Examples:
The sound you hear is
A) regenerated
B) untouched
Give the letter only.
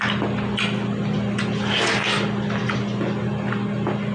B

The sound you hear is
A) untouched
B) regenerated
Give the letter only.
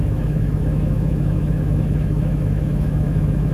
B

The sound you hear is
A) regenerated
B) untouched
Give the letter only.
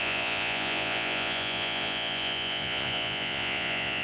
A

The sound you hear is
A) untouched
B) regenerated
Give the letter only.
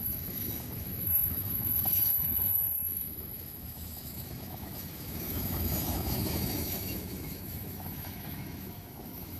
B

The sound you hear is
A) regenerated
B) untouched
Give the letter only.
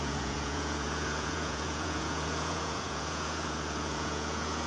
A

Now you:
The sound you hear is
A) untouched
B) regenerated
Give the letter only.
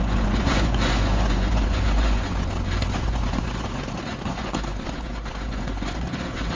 B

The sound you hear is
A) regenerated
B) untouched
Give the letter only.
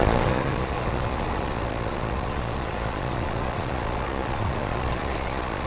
A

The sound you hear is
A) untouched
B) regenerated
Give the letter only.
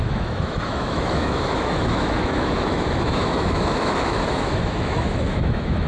B